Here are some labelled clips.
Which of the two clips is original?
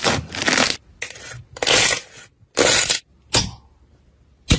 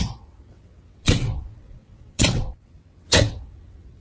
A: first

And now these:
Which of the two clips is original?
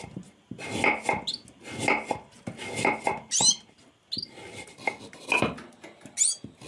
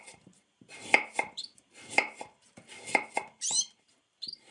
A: first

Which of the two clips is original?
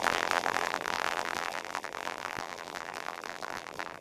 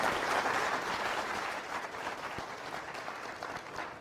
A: second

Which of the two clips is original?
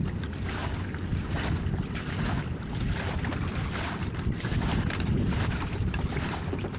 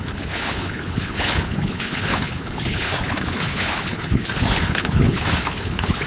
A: first